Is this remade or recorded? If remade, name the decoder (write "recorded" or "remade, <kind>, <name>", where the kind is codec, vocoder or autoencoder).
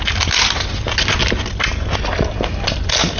recorded